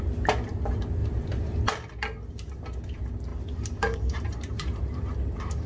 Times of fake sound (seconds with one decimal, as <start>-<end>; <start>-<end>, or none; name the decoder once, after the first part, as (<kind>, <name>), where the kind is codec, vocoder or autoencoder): 1.0-1.6 (vocoder, BigVGAN v2); 3.3-5.7